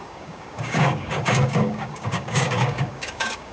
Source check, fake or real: fake